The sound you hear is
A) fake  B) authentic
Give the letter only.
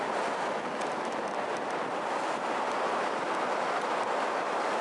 B